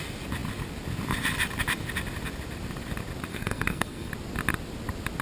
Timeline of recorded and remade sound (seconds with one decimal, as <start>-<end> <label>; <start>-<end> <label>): 0.0-3.3 recorded; 3.3-4.1 remade; 4.1-5.2 recorded